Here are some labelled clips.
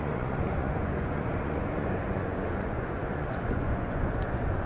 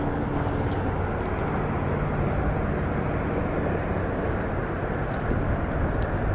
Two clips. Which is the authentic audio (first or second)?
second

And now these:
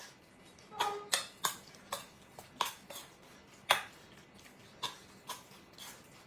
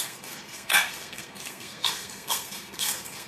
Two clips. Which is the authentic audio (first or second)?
first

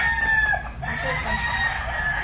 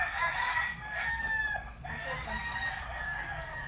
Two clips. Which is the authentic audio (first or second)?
first